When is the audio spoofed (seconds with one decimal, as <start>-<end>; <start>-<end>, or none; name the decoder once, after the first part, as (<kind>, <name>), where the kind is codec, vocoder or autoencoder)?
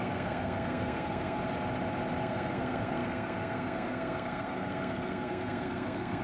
0.0-1.4 (codec, SNAC); 2.2-6.2